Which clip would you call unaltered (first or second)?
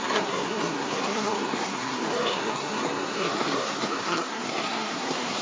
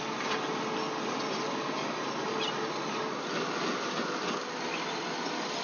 second